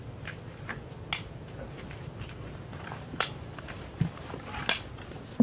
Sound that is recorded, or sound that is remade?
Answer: recorded